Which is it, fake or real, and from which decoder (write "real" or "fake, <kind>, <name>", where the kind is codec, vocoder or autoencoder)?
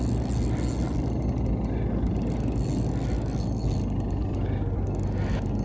real